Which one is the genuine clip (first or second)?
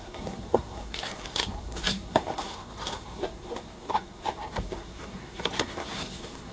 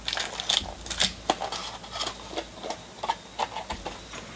second